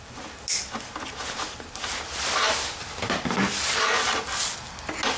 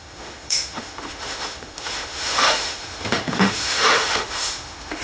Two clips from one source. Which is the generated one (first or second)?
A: second